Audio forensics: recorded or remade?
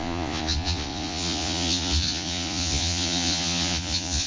remade